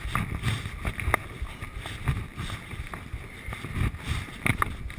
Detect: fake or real real